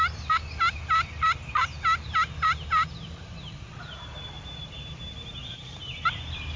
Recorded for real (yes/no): yes